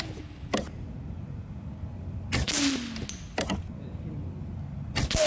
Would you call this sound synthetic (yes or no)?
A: no